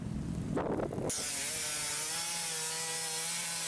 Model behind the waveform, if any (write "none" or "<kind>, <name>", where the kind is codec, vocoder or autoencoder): none